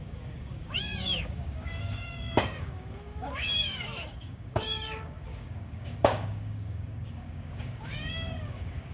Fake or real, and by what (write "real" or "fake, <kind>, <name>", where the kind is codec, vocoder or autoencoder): fake, codec, DAC